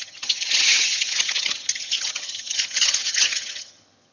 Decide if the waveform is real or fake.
fake